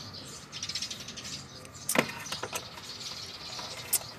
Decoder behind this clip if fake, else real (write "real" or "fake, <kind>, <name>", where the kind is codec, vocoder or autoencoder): real